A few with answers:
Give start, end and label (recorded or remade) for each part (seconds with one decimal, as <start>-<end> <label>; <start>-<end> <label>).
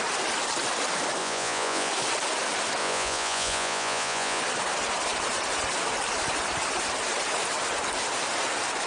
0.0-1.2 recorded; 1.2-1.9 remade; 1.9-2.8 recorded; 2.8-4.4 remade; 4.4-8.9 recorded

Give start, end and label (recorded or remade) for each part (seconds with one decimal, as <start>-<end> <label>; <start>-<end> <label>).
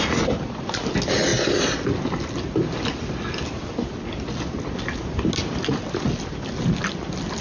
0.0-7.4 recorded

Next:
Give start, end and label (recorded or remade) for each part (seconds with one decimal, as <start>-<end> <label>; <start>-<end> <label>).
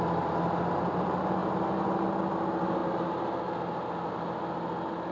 0.0-5.1 recorded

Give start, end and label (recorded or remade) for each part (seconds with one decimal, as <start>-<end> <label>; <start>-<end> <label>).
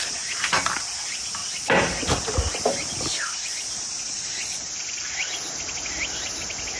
0.0-6.8 recorded